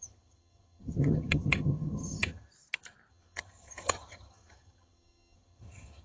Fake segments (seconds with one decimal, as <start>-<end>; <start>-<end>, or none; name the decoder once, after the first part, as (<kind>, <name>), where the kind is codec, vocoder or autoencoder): 0.0-2.5 (vocoder, HiFi-GAN); 3.1-6.0

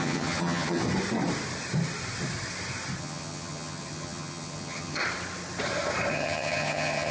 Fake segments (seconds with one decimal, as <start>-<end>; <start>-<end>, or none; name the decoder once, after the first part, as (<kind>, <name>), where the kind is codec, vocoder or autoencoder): 0.0-0.8 (vocoder, HiFi-GAN); 3.0-5.0; 6.1-7.1

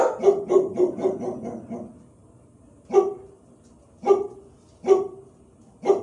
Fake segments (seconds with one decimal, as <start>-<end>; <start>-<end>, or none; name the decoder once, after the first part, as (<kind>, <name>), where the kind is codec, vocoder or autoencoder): none